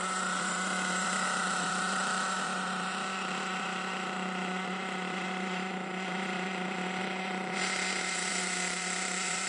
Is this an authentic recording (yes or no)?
no